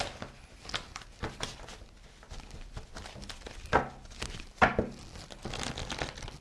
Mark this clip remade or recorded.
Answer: recorded